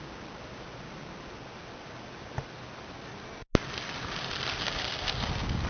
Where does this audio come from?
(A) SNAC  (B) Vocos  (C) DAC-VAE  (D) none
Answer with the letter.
D